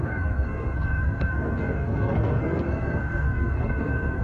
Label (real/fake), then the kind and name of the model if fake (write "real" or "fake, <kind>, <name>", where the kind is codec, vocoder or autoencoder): fake, codec, SNAC